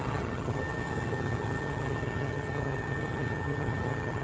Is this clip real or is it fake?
fake